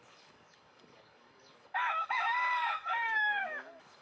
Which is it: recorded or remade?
remade